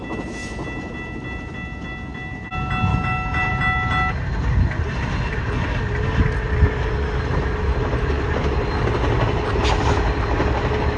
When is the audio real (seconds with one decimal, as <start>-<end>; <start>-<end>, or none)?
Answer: 0.0-2.9; 3.5-11.0